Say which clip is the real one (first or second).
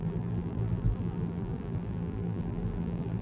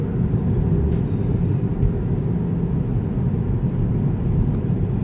second